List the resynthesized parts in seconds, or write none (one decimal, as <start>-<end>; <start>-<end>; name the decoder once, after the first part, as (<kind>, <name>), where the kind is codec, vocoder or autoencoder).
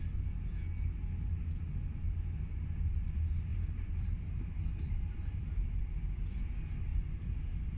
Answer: 3.5-5.8 (vocoder, BigVGAN v2)